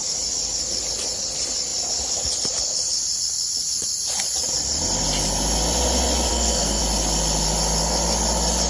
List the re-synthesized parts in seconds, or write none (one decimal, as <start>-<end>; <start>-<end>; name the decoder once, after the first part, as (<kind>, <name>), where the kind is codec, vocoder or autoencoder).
6.3-6.8 (codec, SNAC)